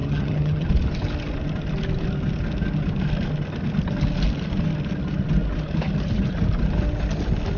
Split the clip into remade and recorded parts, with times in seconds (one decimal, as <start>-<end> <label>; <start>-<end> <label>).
0.0-0.7 remade; 0.7-7.6 recorded